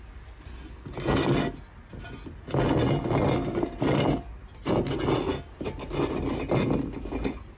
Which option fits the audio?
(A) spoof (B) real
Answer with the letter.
B